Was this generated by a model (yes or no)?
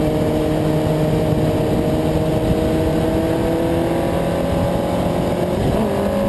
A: no